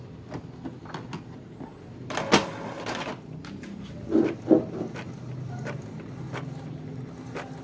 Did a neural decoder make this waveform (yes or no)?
no